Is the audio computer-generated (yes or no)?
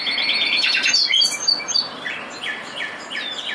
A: no